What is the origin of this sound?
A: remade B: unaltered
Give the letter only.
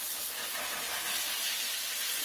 B